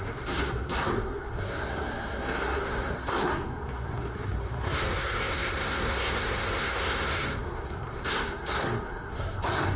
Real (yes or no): no